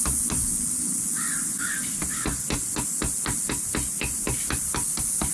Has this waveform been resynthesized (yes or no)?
no